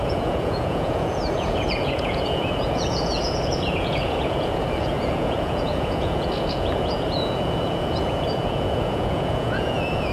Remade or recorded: remade